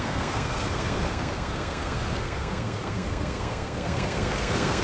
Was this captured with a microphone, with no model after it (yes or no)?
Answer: no